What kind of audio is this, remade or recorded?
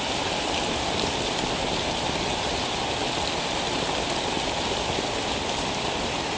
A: recorded